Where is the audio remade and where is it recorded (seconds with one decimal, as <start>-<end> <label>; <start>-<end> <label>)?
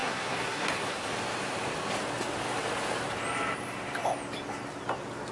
0.0-1.1 remade; 1.1-5.3 recorded